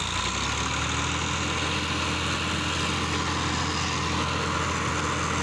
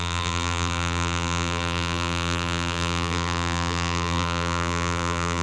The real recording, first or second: first